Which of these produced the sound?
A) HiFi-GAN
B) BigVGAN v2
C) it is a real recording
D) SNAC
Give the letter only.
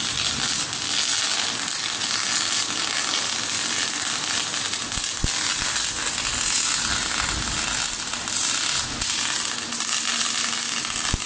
C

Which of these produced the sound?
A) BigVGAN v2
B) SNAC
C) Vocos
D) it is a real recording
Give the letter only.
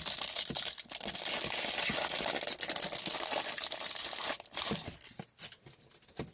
D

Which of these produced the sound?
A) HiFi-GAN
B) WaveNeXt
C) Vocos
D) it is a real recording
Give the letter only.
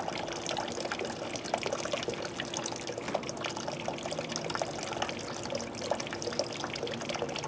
D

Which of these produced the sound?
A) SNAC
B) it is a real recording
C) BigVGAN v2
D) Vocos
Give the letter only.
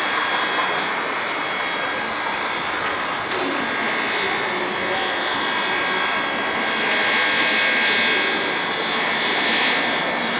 B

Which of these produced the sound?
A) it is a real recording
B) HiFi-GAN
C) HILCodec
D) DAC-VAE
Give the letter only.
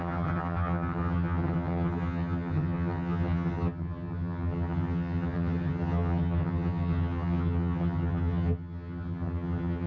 B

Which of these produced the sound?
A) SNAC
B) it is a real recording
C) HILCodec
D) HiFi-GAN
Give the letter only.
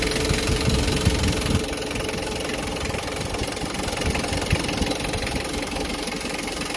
B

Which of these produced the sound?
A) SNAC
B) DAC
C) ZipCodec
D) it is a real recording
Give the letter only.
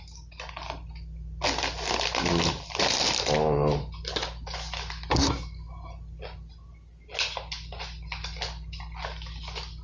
D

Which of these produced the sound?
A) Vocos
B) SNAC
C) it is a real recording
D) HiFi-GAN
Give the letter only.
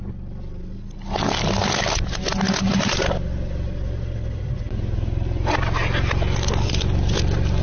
C